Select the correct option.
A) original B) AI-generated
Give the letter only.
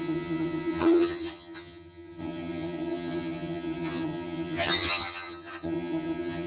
B